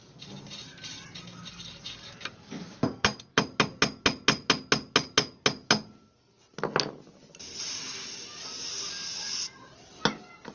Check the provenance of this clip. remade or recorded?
recorded